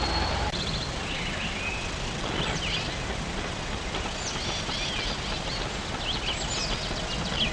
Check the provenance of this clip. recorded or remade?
recorded